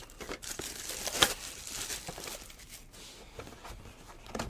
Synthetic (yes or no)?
yes